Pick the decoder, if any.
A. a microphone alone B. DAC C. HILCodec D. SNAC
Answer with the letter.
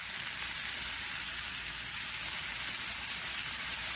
A